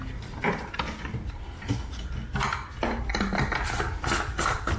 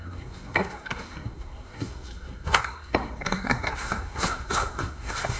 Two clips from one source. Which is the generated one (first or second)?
second